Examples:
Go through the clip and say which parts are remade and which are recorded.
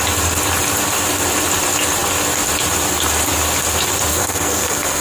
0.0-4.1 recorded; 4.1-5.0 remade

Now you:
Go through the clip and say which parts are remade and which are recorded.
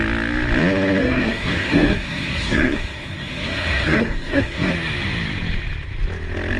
0.0-1.0 recorded; 1.0-4.7 remade; 4.7-6.6 recorded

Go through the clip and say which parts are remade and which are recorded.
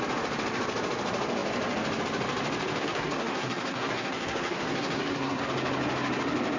0.0-2.8 recorded; 2.8-5.4 remade; 5.4-6.6 recorded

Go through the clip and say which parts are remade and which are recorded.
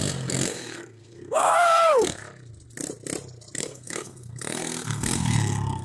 0.0-2.2 remade; 2.2-3.6 recorded; 3.6-5.8 remade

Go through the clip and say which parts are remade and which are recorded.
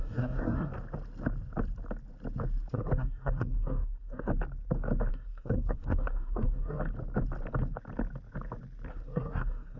0.0-0.7 remade; 0.7-2.7 recorded; 2.7-4.3 remade; 4.3-5.1 recorded; 5.1-6.8 remade; 6.8-8.9 recorded; 8.9-9.8 remade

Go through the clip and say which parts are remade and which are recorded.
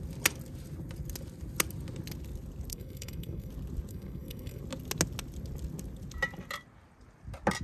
0.0-2.7 recorded; 2.7-3.5 remade; 3.5-3.9 recorded; 3.9-4.6 remade; 4.6-7.6 recorded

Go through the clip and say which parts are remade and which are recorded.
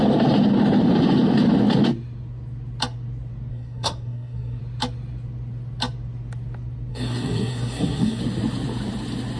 0.0-3.5 recorded; 3.5-4.6 remade; 4.6-6.9 recorded; 6.9-8.2 remade; 8.2-9.4 recorded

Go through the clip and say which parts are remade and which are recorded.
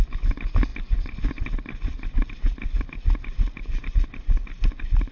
0.0-5.1 recorded